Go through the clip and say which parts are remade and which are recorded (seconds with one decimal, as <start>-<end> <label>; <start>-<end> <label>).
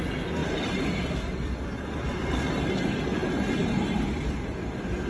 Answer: 0.0-5.1 recorded